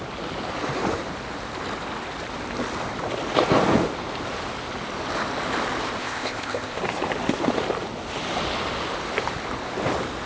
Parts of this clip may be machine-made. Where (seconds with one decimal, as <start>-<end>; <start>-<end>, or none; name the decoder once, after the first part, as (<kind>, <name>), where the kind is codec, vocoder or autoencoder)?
6.0-6.8 (codec, ZipCodec)